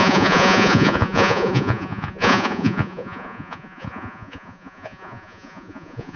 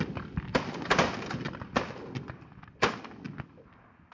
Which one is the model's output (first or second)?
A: first